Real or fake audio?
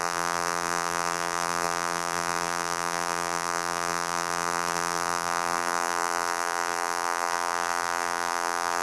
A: fake